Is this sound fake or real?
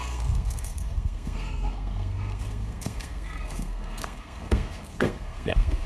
fake